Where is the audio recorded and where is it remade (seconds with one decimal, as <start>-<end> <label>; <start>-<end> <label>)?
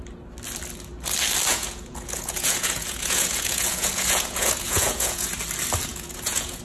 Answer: 0.0-1.5 recorded; 1.5-5.3 remade; 5.3-5.9 recorded; 5.9-6.6 remade